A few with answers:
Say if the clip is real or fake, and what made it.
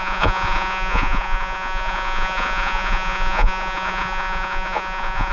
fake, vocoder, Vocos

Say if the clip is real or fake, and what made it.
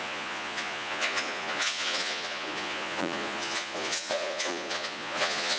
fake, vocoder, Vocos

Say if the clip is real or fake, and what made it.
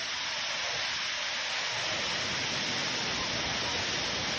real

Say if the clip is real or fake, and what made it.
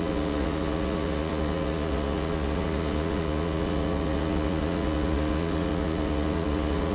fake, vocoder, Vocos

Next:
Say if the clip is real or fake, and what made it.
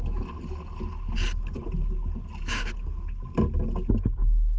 real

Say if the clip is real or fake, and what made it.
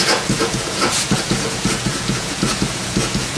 fake, vocoder, Vocos